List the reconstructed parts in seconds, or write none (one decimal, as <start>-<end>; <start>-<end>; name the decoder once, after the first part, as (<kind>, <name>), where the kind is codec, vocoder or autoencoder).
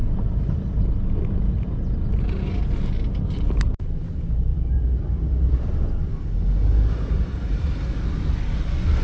0.0-0.9 (vocoder, BigVGAN v2); 4.5-6.1